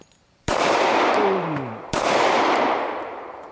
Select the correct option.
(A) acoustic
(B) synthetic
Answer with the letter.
B